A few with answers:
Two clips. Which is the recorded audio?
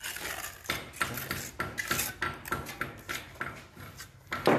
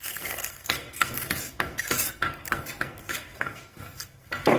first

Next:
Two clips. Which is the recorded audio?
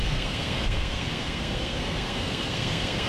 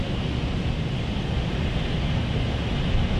second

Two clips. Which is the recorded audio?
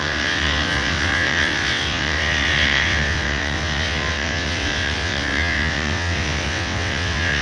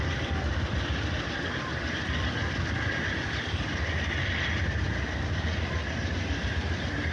second